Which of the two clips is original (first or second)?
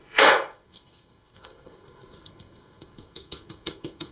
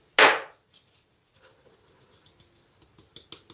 second